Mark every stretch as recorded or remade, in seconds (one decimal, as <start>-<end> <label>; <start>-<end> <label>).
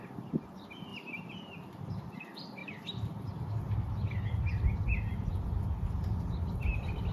0.0-2.6 recorded; 2.6-5.6 remade; 5.6-7.1 recorded